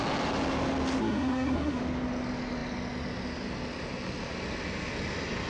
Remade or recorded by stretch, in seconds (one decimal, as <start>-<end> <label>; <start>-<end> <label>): 0.0-1.0 recorded; 1.0-1.8 remade; 1.8-5.5 recorded